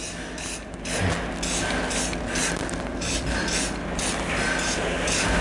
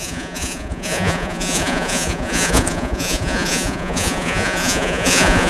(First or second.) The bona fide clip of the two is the first